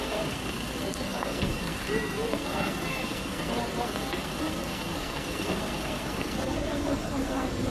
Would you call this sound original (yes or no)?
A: no